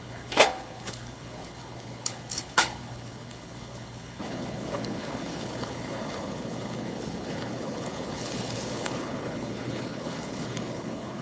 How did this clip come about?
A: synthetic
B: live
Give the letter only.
A